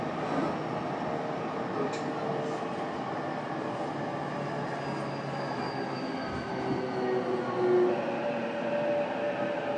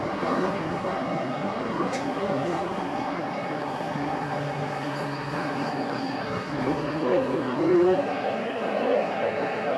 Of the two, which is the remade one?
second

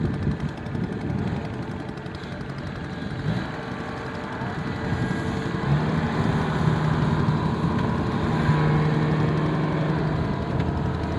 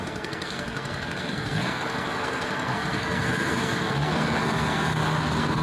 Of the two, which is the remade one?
second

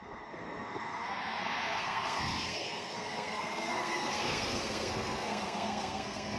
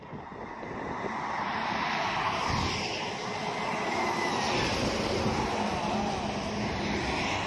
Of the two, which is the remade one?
first